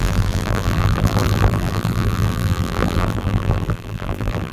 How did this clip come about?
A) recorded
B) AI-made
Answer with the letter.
B